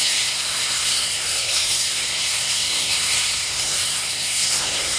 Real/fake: fake